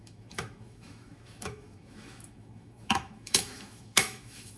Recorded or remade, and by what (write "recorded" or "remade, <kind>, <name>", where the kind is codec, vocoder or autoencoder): remade, autoencoder, DAC-VAE